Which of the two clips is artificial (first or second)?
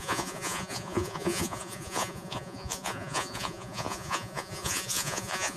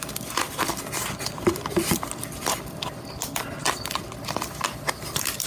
first